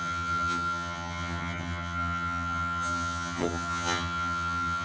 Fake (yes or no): yes